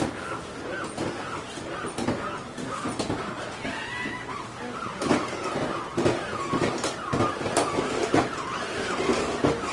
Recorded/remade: recorded